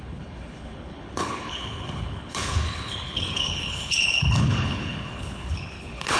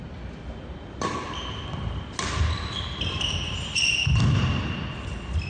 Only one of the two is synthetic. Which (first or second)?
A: first